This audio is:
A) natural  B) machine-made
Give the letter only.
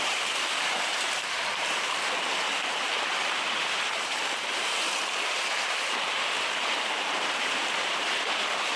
B